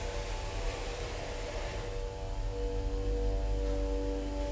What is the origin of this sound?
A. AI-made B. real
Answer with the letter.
B